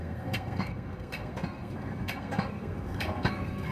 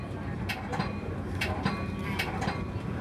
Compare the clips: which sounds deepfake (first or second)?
first